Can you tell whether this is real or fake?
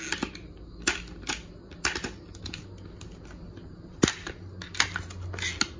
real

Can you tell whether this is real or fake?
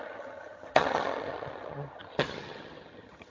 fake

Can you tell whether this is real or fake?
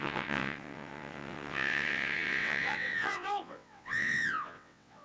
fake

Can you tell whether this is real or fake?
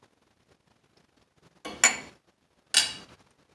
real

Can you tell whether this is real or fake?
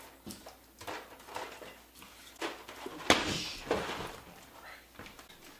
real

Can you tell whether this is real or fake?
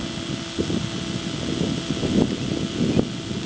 real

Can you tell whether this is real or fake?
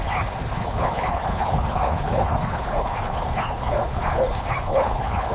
fake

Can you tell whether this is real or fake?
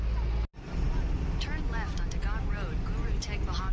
real